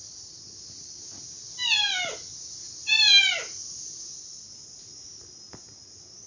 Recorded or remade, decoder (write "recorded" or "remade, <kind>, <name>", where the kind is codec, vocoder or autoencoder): recorded